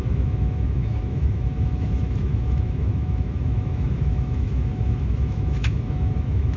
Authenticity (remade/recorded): remade